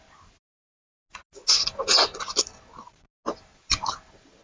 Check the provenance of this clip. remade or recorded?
recorded